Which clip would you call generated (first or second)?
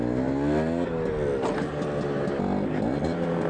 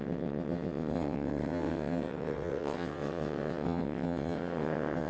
second